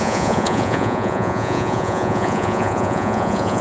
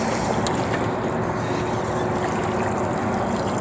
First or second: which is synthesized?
first